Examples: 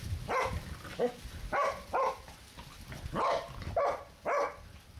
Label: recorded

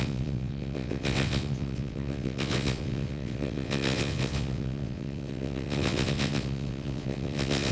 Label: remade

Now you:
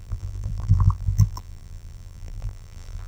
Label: remade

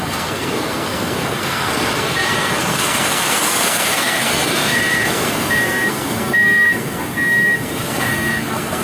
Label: remade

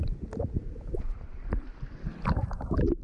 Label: recorded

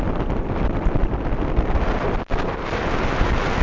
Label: recorded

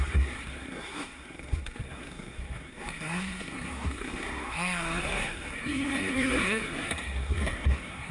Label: remade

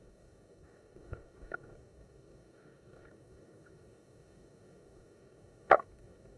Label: remade